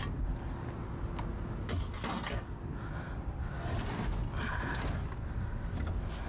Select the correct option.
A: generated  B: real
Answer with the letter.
B